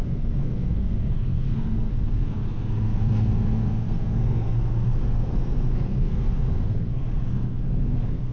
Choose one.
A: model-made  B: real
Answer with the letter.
A